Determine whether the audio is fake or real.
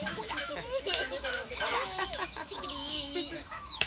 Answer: fake